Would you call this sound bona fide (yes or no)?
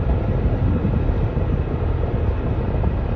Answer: yes